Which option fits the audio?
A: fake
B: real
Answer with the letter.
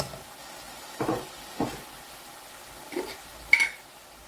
B